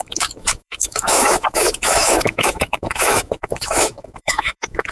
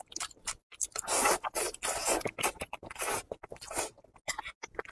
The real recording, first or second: second